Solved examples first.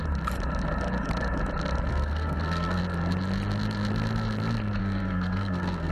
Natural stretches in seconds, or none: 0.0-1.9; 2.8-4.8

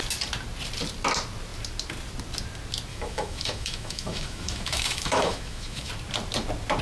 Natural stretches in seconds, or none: 0.0-2.9; 5.9-6.8